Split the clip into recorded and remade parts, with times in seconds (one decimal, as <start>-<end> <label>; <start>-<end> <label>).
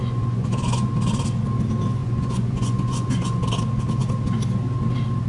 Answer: 0.0-0.9 remade; 0.9-2.0 recorded; 2.0-3.4 remade; 3.4-5.3 recorded